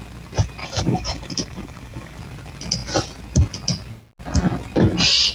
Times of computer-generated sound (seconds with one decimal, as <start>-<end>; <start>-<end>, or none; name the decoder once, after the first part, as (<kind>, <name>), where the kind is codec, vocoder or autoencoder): 0.6-2.2 (codec, DAC)